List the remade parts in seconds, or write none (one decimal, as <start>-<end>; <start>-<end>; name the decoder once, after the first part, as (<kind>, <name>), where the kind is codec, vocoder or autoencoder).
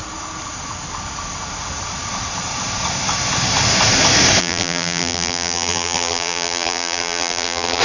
4.4-7.8 (vocoder, BigVGAN v2)